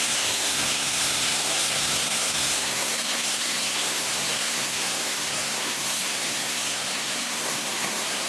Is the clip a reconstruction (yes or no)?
yes